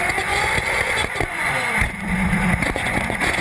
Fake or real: fake